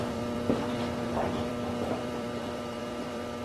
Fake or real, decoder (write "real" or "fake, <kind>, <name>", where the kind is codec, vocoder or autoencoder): fake, vocoder, BigVGAN v2